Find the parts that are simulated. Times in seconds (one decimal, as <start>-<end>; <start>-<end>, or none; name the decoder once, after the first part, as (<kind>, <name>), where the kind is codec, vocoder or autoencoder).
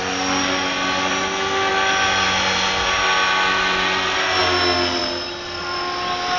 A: none